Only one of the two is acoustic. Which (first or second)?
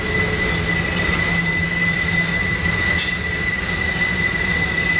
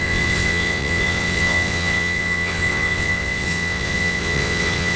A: first